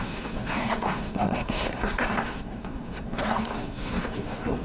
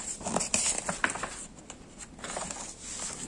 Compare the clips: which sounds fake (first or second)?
first